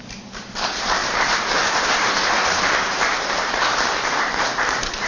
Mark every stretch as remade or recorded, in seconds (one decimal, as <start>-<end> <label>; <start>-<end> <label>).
0.0-5.1 remade